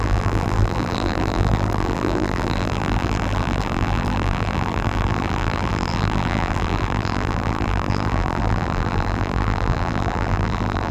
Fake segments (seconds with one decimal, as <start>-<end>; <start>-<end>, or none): 0.0-10.9